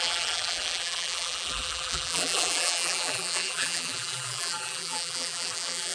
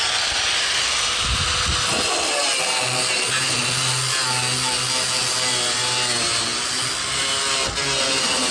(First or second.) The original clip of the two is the second